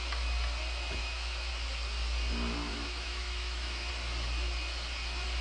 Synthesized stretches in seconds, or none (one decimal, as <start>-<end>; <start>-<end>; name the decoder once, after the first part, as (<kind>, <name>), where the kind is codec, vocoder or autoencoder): 1.0-1.5 (autoencoder, DAC-VAE); 2.7-3.9

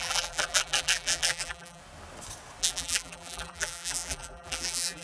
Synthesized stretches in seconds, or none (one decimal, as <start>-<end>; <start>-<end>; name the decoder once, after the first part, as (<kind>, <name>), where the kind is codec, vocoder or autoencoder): 0.0-1.8 (vocoder, BigVGAN v2); 2.6-5.0

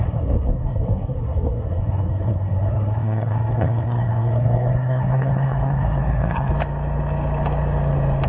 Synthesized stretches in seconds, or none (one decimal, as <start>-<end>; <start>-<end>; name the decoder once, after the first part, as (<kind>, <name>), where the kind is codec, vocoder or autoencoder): 0.0-6.5 (codec, SNAC)